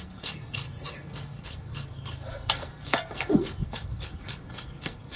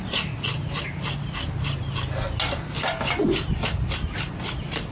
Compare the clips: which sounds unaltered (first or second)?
second